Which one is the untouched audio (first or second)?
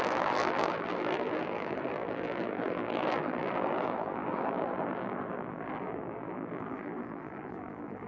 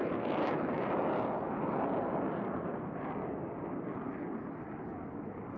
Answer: second